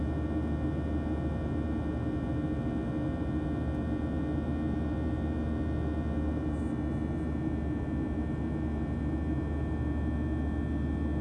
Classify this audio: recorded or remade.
recorded